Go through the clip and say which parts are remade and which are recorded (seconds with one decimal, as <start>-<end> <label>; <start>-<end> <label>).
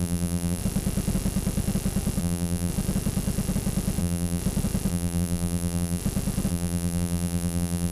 0.0-0.6 remade; 0.6-2.2 recorded; 2.2-2.7 remade; 2.7-4.0 recorded; 4.0-4.4 remade; 4.4-4.9 recorded; 4.9-6.0 remade; 6.0-6.5 recorded; 6.5-7.9 remade